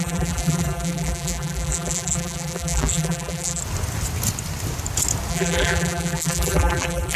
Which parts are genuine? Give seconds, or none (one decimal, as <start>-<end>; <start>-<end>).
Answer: 3.6-5.3

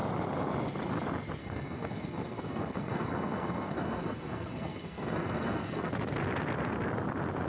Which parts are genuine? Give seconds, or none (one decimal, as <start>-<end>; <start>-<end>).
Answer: 0.0-1.4; 5.9-7.5

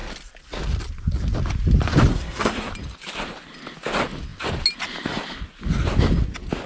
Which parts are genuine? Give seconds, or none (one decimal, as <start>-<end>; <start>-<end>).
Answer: 0.0-2.1; 2.7-6.7

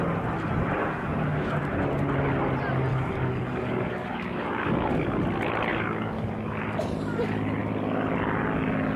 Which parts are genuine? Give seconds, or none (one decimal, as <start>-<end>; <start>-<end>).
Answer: 0.0-0.8; 1.6-2.9; 5.2-5.7; 6.6-9.0

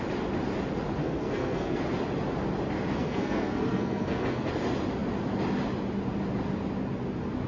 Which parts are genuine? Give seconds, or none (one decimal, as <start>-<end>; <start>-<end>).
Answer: 0.0-1.0; 1.8-2.9; 4.5-7.5

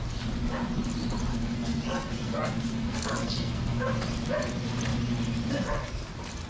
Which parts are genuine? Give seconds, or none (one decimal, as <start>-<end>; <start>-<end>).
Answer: 0.0-1.3; 3.8-6.5

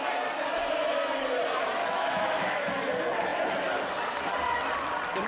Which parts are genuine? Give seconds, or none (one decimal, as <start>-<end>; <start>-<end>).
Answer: 0.0-1.8; 2.7-5.3

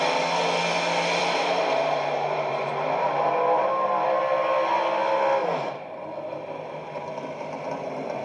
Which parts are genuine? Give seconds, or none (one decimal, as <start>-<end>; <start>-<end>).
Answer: 0.0-1.2; 2.7-5.4; 6.0-8.2